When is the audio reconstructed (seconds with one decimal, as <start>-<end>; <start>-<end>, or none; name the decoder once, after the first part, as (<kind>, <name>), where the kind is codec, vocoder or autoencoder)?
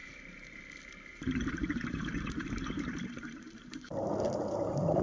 0.0-0.6 (vocoder, BigVGAN v2); 1.1-4.1